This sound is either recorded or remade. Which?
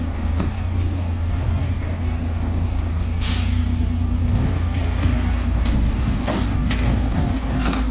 remade